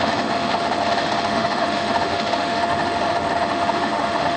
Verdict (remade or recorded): remade